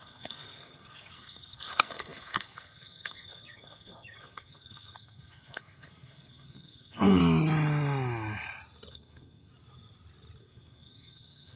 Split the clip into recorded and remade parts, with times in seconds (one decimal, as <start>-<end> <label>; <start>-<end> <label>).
0.0-7.2 remade; 7.2-8.9 recorded; 8.9-9.5 remade; 9.5-10.4 recorded; 10.4-11.6 remade